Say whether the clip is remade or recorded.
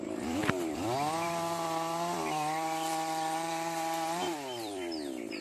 remade